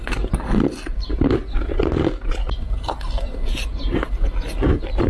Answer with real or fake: real